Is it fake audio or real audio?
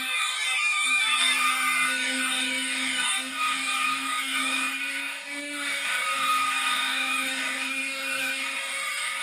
fake